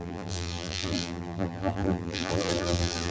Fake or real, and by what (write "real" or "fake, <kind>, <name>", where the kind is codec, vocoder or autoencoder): fake, vocoder, BigVGAN v2